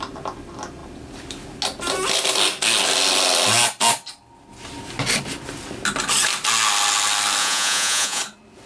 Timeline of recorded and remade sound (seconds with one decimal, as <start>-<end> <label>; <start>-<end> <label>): 0.0-7.4 recorded; 7.4-8.2 remade; 8.2-8.7 recorded